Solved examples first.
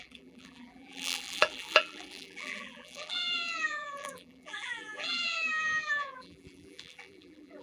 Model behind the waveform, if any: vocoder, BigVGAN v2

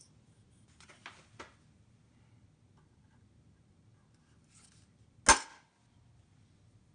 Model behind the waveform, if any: none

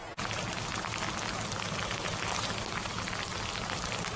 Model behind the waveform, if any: none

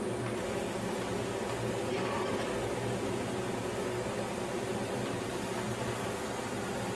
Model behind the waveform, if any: none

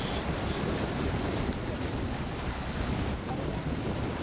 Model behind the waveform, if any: none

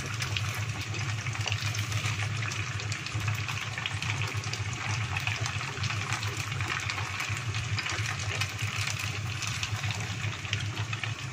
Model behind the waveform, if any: vocoder, BigVGAN v2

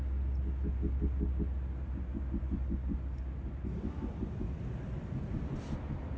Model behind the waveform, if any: none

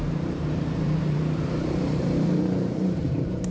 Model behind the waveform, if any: vocoder, BigVGAN v2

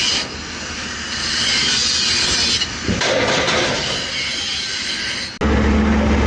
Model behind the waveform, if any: none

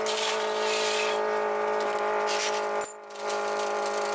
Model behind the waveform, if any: none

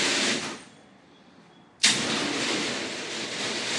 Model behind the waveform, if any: vocoder, BigVGAN v2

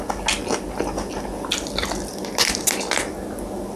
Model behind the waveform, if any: none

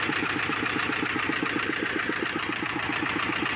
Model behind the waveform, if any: vocoder, BigVGAN v2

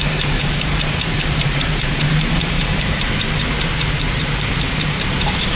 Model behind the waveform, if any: vocoder, BigVGAN v2